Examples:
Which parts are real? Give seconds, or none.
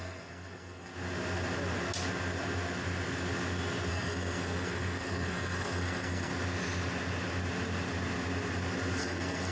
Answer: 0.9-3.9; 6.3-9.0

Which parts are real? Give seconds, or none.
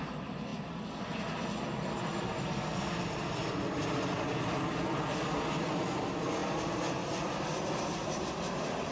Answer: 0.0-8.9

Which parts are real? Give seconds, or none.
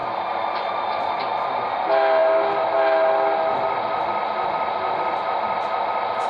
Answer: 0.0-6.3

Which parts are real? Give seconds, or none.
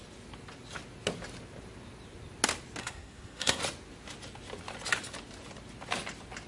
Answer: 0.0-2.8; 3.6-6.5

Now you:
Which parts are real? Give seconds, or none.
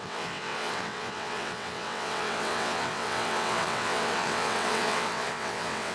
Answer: none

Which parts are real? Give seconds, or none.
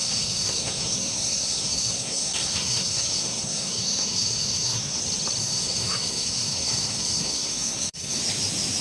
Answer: 5.0-5.4; 8.2-8.8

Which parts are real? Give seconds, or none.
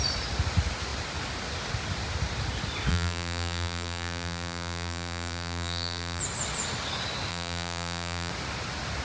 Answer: 0.0-2.9; 6.2-7.3; 8.3-9.0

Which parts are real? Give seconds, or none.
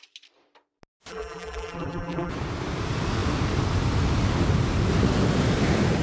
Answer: 0.0-1.1; 2.3-6.0